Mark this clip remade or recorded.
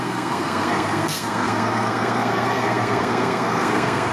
remade